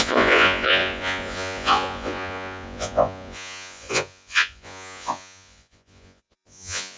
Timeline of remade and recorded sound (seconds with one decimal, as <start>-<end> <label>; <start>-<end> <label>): 0.0-7.0 remade